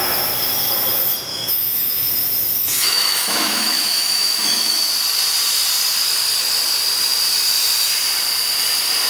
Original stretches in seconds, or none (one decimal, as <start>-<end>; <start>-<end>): 0.0-1.3; 2.1-2.6; 4.9-9.1